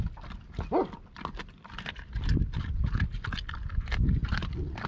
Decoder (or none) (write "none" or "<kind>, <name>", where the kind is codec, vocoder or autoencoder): none